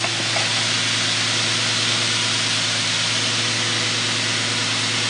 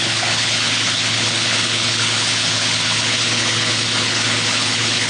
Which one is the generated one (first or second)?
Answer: second